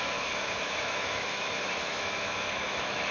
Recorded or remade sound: remade